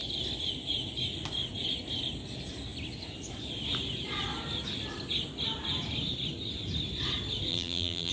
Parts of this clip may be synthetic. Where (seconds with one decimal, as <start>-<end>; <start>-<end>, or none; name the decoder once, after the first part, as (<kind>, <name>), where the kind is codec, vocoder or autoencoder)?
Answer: 7.5-8.1 (vocoder, BigVGAN v2)